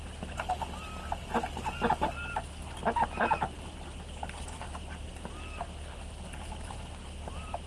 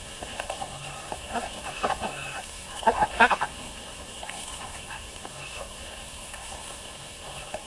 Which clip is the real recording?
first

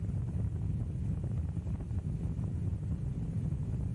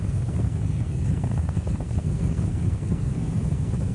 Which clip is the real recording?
first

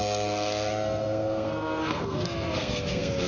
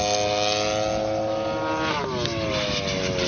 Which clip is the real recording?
second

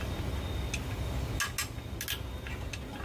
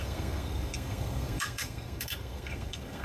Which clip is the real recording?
first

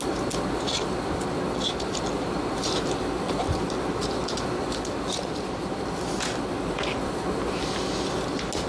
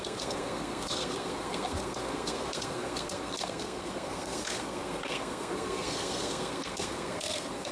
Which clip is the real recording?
first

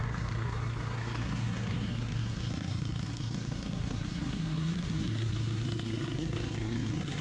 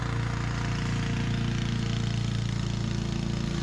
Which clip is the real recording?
second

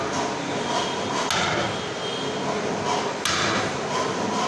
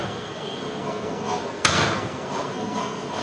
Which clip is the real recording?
first